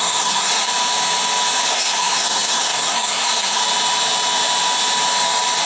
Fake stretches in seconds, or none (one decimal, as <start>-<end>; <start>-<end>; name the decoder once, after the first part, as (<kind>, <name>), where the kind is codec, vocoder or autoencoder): 0.0-0.7 (codec, SNAC); 1.7-3.6